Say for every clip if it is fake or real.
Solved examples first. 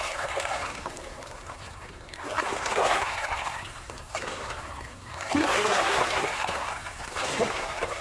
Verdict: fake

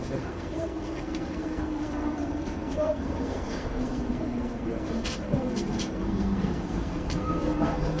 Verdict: fake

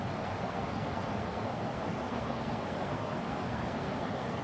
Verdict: fake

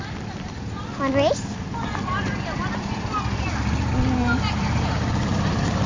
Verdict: real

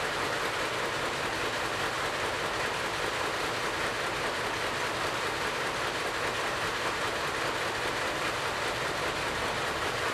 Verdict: real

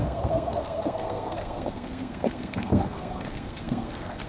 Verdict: fake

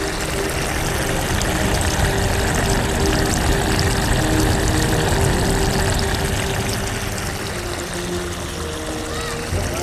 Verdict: real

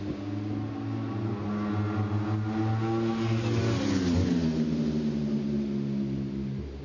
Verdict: real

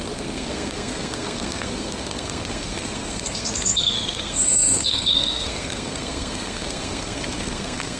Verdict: fake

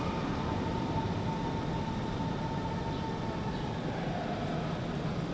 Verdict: real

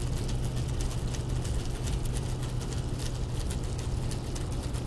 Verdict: real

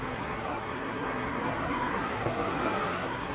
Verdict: fake